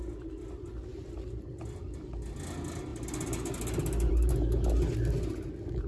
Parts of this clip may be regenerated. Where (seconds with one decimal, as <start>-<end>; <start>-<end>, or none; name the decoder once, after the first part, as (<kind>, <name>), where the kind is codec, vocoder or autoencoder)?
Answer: none